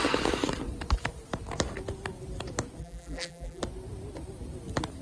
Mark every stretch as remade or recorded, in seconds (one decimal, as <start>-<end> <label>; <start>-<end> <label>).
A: 0.0-2.8 recorded; 2.8-3.6 remade; 3.6-5.0 recorded